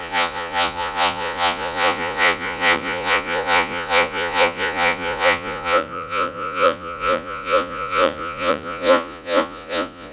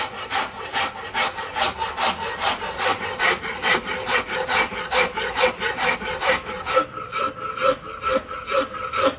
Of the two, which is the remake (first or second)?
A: first